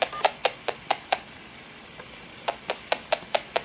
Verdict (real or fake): real